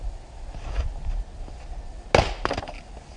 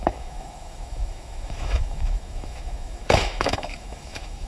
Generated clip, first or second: second